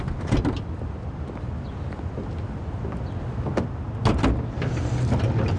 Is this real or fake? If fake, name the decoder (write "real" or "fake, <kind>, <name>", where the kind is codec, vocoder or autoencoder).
real